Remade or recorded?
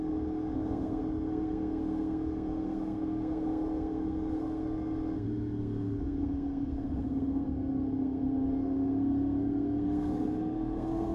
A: remade